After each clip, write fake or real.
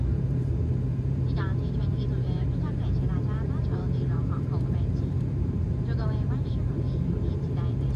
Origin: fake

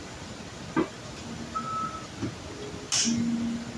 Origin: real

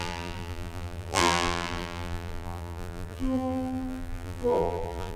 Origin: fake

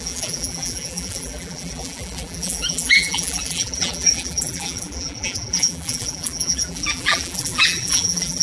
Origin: fake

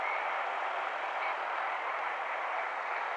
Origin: real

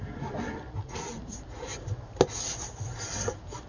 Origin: real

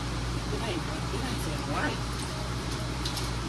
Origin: fake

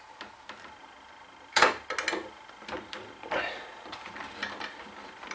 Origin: real